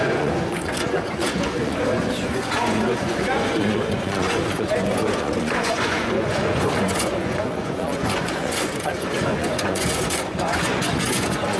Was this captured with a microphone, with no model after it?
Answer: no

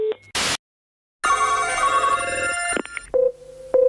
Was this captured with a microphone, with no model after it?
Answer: yes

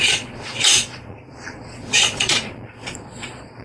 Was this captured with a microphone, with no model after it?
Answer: no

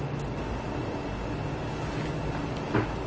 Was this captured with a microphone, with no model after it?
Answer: yes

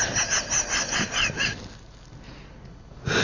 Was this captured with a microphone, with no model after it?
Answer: yes